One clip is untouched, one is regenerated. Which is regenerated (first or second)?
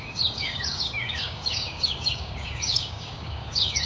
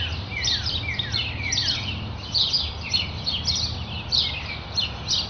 first